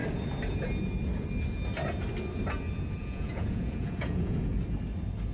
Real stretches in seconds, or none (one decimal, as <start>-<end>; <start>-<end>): 0.0-3.0; 4.5-5.3